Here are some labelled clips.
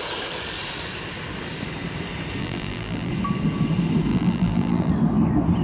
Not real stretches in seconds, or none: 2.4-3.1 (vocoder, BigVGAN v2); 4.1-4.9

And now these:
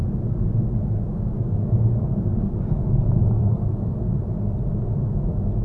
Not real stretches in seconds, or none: 1.1-4.0 (codec, DAC)